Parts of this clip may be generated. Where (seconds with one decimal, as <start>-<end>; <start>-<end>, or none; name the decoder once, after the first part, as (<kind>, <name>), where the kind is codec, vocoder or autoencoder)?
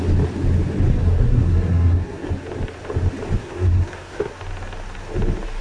0.9-2.3 (codec, SNAC); 3.4-4.3